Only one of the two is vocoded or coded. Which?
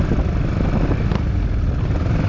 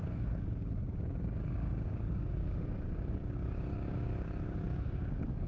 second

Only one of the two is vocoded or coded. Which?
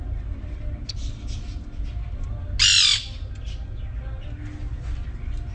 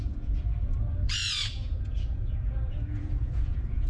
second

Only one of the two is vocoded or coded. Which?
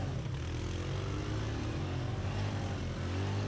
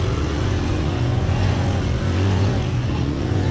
second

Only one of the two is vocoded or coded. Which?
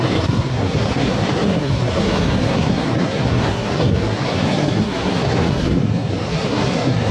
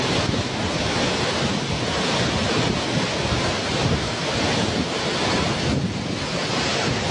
first